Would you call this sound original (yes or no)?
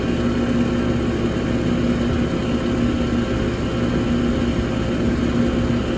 yes